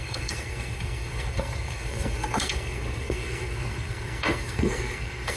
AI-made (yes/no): yes